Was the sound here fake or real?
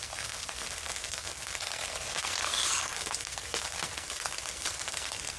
fake